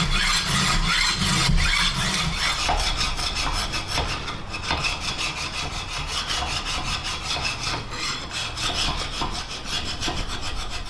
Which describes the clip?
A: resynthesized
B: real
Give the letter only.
B